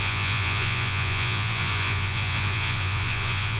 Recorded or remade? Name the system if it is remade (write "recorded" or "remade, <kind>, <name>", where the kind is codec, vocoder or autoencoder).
remade, vocoder, Vocos